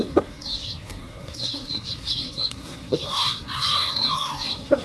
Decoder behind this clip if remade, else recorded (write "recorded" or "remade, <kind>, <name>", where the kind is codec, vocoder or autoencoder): remade, codec, SNAC